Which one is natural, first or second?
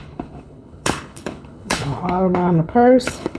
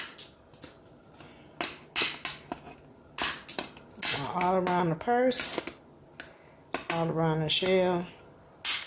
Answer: second